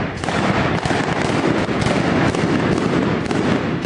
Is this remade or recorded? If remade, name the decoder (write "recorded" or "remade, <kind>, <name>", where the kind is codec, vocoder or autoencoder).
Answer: recorded